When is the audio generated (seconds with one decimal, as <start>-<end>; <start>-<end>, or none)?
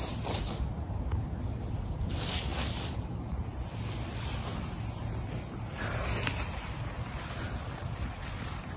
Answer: none